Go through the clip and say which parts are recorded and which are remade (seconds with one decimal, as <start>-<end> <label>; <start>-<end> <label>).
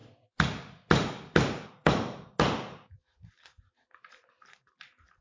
0.0-2.4 remade; 2.4-5.2 recorded